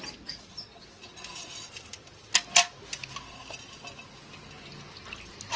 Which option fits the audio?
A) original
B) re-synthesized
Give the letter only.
A